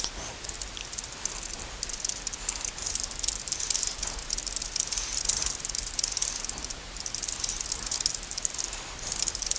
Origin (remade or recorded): recorded